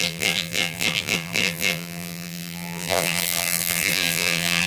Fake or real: fake